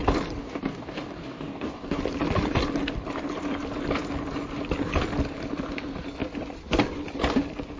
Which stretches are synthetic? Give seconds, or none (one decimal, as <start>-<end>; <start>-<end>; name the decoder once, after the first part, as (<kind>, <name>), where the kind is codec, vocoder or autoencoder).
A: 0.4-2.0 (codec, DAC)